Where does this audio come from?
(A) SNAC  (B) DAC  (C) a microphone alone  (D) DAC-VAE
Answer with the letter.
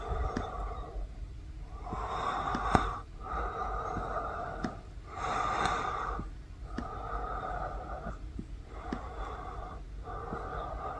C